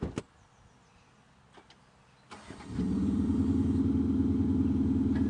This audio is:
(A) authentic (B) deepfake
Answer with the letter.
A